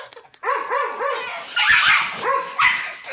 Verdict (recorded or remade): recorded